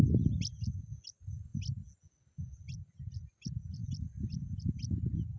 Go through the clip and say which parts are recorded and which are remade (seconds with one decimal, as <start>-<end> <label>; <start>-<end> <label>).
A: 0.0-5.4 recorded